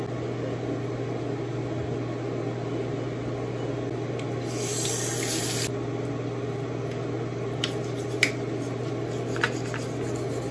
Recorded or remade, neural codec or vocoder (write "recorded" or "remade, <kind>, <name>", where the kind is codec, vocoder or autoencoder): recorded